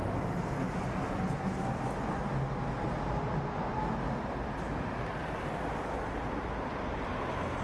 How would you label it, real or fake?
real